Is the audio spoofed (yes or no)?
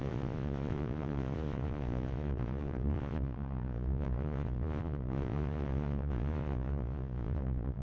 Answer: yes